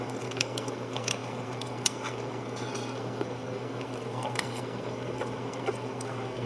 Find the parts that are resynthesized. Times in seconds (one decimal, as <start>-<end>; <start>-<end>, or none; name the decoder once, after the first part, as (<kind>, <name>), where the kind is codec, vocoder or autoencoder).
0.0-6.5 (codec, SNAC)